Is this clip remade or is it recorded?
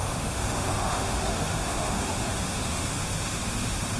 remade